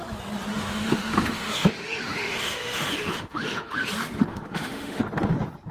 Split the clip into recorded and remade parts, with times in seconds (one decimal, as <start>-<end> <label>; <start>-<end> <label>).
0.0-0.5 recorded; 0.5-3.9 remade; 3.9-4.3 recorded; 4.3-5.0 remade; 5.0-5.7 recorded